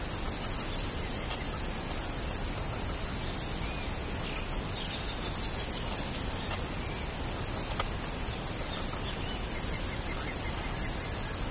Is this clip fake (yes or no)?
no